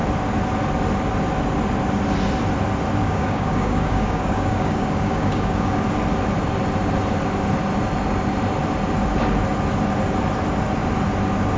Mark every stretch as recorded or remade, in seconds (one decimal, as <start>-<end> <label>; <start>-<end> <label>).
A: 0.0-3.0 recorded; 3.0-5.8 remade; 5.8-11.6 recorded